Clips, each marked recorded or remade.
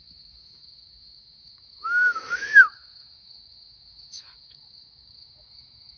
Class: remade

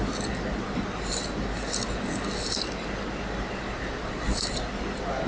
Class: recorded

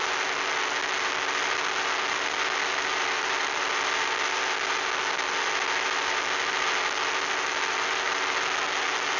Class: recorded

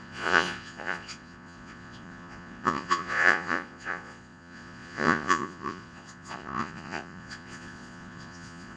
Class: remade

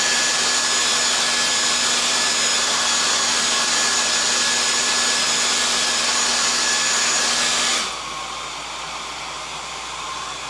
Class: recorded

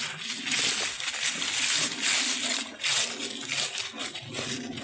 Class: recorded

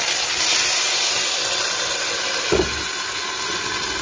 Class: recorded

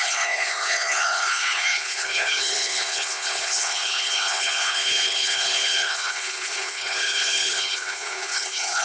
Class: remade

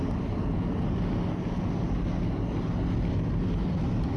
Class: recorded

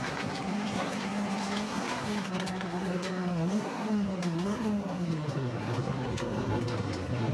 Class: remade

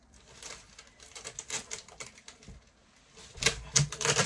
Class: recorded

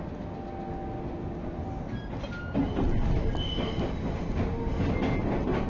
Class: recorded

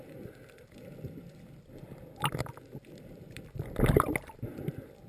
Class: recorded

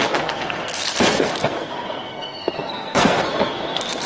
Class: remade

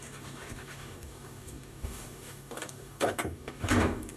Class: remade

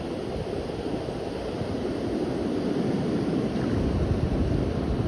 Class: recorded